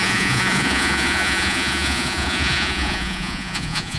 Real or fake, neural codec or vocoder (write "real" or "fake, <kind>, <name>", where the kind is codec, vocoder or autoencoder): fake, vocoder, Vocos